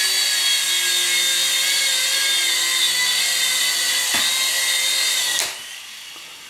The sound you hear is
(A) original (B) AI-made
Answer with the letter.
A